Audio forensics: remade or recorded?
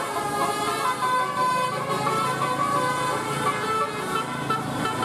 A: recorded